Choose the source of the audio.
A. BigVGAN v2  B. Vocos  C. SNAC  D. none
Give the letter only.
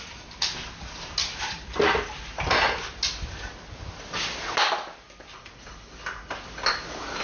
D